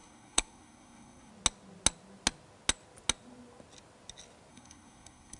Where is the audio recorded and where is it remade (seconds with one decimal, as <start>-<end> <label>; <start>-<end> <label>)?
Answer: 0.0-1.3 remade; 1.3-4.5 recorded; 4.5-5.4 remade